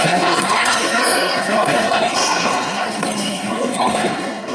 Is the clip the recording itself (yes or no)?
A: no